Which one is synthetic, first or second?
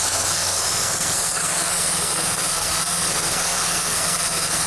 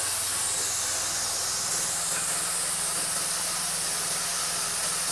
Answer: first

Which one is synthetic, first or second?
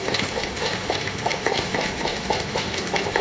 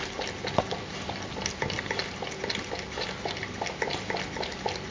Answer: first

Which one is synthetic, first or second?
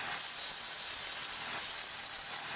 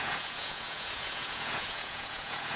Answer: second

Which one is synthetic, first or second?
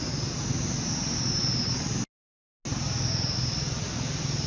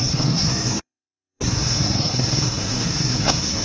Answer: second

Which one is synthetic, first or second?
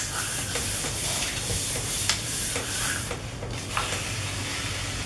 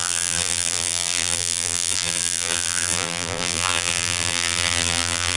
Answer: second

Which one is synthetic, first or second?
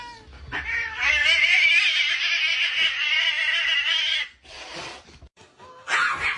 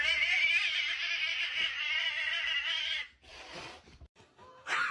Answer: second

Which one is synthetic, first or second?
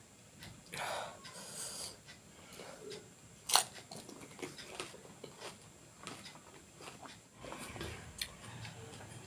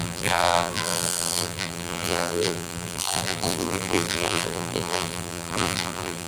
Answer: second